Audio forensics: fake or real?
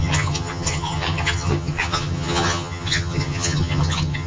fake